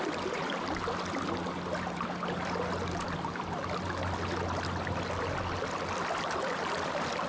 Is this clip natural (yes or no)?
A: yes